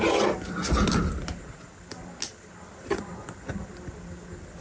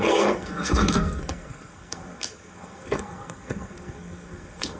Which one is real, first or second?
first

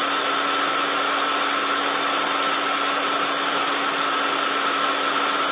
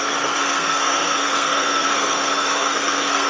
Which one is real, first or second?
first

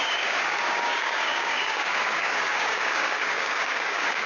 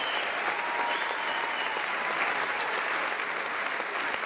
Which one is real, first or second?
second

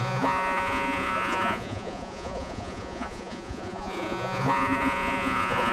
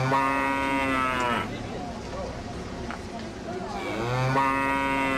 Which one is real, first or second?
second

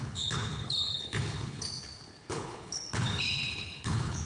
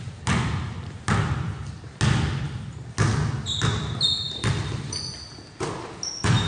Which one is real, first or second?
second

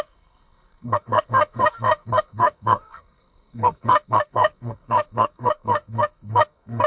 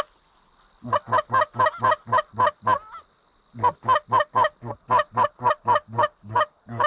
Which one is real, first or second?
second